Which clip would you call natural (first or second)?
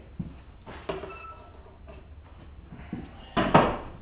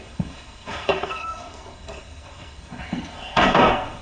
first